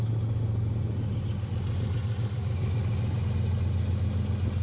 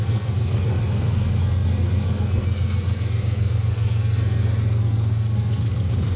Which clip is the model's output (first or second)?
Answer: second